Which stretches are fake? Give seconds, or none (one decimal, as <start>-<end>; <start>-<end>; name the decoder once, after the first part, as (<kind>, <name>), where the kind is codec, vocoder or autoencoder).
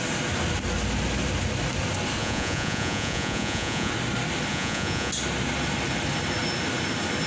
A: 2.2-3.9 (vocoder, Vocos); 4.5-5.1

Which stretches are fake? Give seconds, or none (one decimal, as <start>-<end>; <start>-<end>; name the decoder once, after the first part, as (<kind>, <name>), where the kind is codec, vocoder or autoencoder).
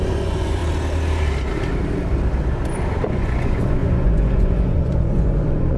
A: 0.0-0.6 (vocoder, Vocos); 3.1-5.8